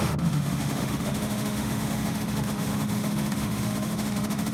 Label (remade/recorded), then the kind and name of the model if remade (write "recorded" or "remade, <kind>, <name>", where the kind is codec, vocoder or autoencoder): remade, autoencoder, DAC-VAE